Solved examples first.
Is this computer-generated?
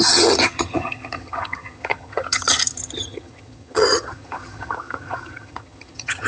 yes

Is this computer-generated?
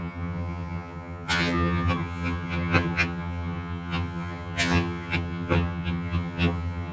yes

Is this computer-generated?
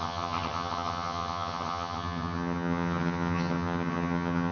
yes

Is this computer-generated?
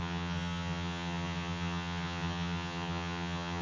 yes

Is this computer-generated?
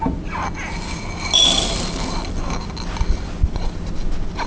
no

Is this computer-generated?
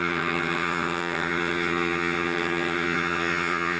yes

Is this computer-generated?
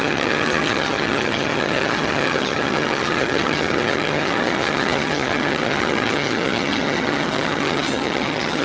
yes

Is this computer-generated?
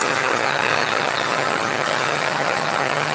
yes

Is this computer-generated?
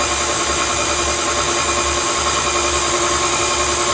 no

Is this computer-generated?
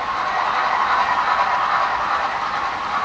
no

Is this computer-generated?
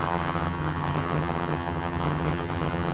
yes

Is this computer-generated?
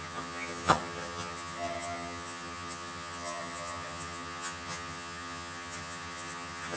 yes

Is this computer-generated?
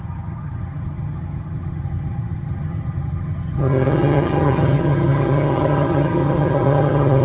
yes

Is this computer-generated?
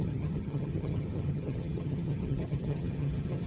yes